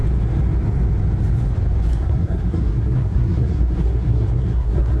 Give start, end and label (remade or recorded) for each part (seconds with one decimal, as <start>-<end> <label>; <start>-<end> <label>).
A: 0.0-1.9 recorded; 1.9-5.0 remade